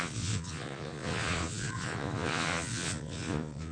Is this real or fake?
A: fake